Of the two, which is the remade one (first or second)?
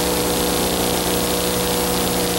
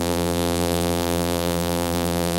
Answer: second